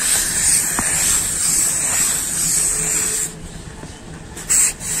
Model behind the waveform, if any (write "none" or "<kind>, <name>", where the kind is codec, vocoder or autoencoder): none